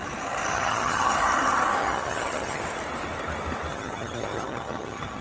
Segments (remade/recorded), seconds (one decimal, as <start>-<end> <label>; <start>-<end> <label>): 0.0-0.5 recorded; 0.5-1.1 remade; 1.1-1.8 recorded; 1.8-2.6 remade; 2.6-3.7 recorded; 3.7-5.2 remade